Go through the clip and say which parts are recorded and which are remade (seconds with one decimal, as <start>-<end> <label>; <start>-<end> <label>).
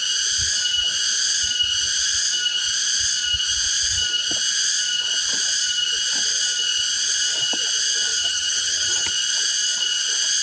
0.0-8.1 recorded; 8.1-9.1 remade; 9.1-10.4 recorded